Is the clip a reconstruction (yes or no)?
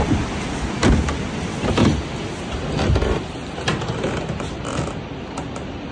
no